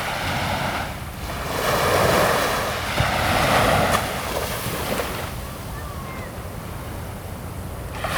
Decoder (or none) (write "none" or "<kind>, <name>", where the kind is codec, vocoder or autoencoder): none